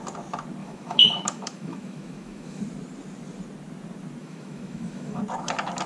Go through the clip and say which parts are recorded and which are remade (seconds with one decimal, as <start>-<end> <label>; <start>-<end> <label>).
0.0-0.6 recorded; 0.6-2.6 remade; 2.6-4.2 recorded; 4.2-5.2 remade; 5.2-5.9 recorded